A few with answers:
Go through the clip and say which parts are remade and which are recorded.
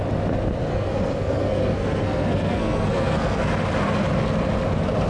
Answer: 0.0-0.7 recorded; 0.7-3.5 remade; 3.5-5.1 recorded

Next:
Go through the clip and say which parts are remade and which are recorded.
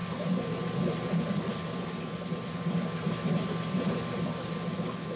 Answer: 0.0-3.1 remade; 3.1-5.2 recorded